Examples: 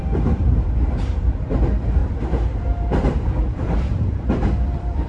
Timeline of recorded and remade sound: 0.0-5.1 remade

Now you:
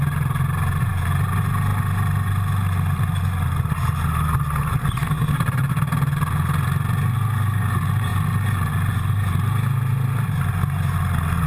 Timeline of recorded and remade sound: 0.0-11.5 recorded

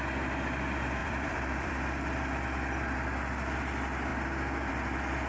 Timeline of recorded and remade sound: 0.0-1.0 recorded; 1.0-1.7 remade; 1.7-5.3 recorded